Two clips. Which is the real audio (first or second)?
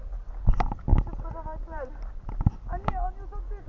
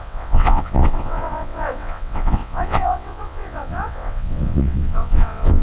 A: first